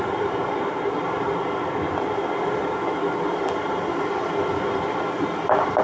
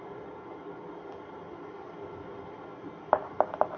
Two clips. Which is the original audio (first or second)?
second